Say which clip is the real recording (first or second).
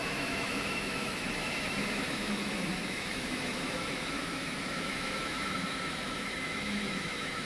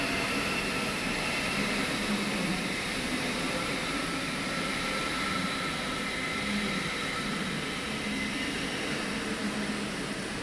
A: second